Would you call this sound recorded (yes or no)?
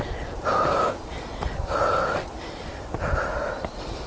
yes